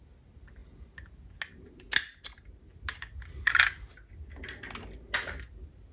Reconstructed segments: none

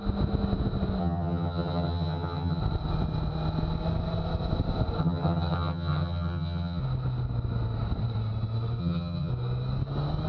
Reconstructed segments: 1.0-2.6 (vocoder, HiFi-GAN); 5.0-6.8; 8.8-9.3

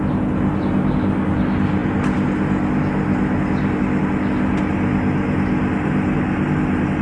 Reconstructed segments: none

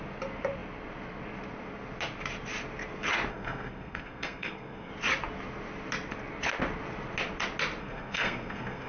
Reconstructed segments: 3.3-4.9 (codec, SNAC); 7.8-8.9

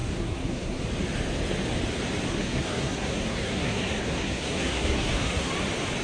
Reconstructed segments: 0.0-0.8 (codec, SNAC); 2.3-5.5

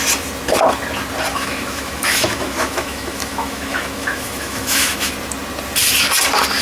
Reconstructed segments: 1.3-5.1 (autoencoder, DAC-VAE)

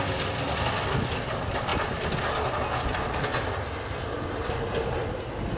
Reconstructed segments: none

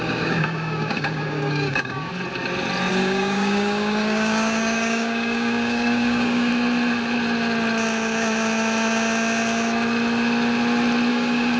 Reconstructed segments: 0.0-2.1 (codec, DAC); 2.9-6.5; 11.1-11.6